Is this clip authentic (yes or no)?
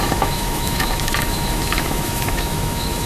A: no